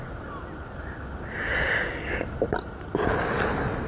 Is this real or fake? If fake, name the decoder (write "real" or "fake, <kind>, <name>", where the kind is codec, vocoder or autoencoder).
real